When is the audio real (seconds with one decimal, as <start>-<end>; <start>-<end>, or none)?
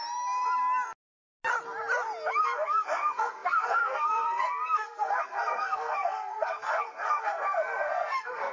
0.0-2.4